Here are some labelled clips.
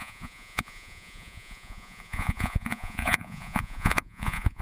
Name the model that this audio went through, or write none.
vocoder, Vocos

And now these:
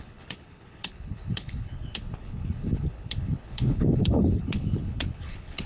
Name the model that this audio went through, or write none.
codec, HILCodec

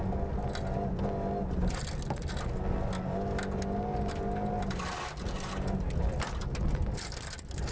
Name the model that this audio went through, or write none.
none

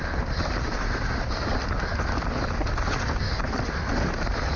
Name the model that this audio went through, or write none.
none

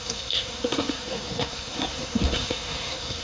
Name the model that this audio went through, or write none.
codec, SNAC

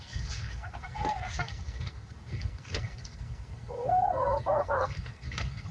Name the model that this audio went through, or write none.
codec, SNAC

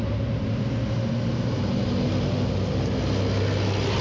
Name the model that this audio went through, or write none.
none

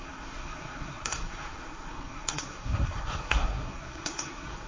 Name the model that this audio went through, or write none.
codec, SNAC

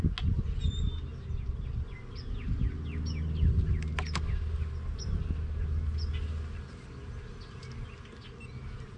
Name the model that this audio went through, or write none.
none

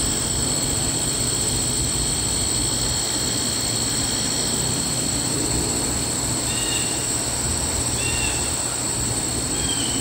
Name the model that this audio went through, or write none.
none